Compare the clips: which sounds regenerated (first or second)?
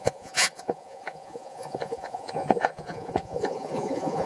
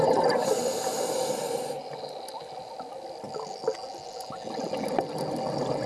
first